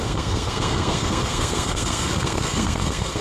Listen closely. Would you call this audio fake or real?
fake